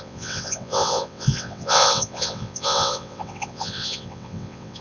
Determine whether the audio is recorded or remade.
remade